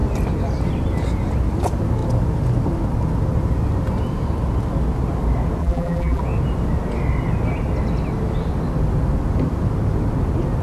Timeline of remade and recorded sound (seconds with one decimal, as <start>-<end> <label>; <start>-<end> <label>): 0.0-5.6 recorded; 5.6-6.2 remade; 6.2-10.6 recorded